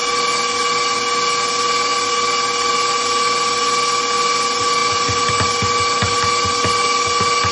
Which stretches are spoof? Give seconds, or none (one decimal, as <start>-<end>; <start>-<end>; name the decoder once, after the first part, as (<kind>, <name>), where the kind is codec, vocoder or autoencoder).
none